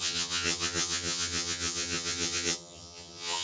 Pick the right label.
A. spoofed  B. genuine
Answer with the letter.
A